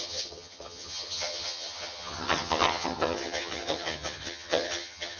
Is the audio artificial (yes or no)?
yes